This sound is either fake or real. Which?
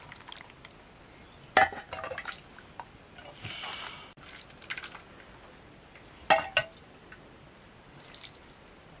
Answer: real